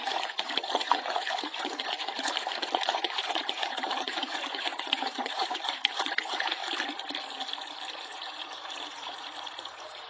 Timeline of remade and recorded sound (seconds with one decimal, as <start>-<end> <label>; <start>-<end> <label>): 0.0-6.6 remade; 6.6-7.9 recorded; 7.9-10.1 remade